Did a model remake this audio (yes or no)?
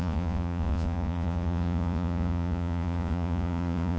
yes